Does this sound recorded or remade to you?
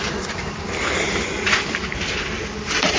recorded